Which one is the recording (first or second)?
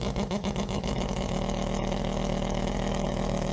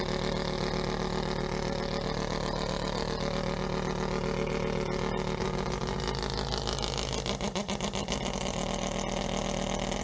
second